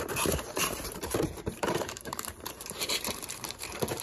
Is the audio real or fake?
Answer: fake